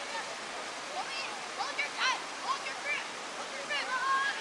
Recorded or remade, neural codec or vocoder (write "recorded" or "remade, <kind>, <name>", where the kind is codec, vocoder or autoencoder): recorded